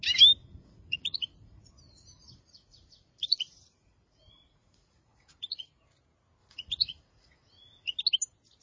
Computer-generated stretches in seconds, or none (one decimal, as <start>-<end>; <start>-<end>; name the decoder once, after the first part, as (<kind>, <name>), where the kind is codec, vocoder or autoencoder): 0.4-1.7 (vocoder, Vocos); 2.1-5.7; 6.4-8.0